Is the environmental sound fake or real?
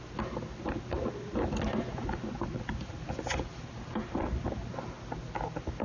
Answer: real